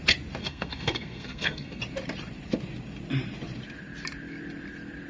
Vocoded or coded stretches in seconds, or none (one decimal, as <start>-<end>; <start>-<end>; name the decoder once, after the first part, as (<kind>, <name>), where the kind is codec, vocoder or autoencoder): 0.4-1.8 (codec, SNAC)